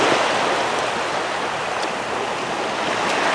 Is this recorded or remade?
recorded